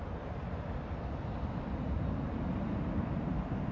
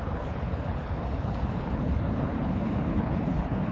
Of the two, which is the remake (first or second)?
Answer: second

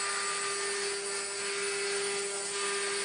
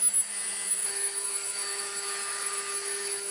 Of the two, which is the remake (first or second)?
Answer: second